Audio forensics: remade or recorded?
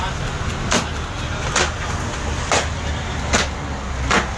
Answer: recorded